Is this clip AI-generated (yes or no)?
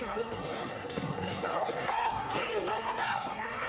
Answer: yes